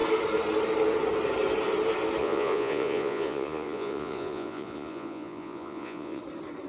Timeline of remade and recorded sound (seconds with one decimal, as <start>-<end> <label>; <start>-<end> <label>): 0.0-2.2 recorded; 2.2-6.2 remade; 6.2-6.7 recorded